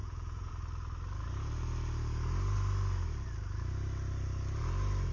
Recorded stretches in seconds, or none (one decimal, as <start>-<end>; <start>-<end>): 0.5-5.1